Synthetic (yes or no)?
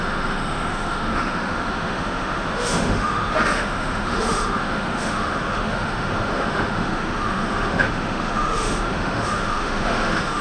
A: yes